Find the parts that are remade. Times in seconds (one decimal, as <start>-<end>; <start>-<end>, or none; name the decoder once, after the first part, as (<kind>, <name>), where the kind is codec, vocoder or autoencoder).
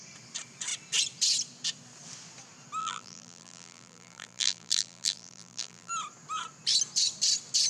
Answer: 2.8-5.9 (vocoder, BigVGAN v2)